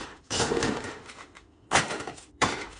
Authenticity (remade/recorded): remade